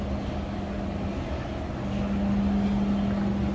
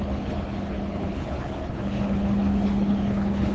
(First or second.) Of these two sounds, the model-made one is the second